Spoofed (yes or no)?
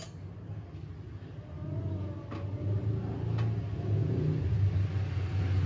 no